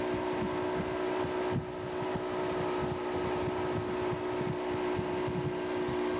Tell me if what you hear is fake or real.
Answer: real